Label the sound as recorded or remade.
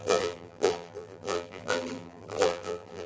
remade